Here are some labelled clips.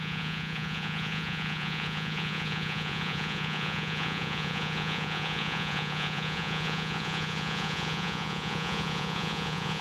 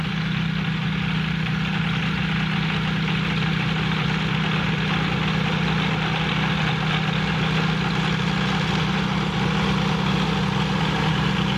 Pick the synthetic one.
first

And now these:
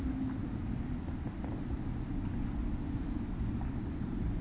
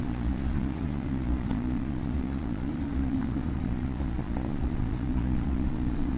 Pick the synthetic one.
second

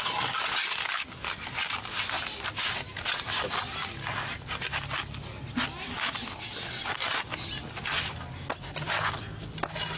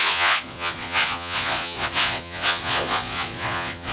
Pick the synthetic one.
second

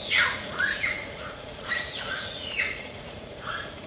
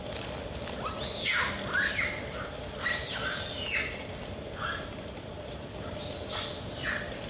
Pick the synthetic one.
first